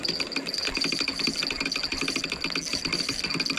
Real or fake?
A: real